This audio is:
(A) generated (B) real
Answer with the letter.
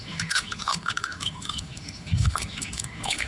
A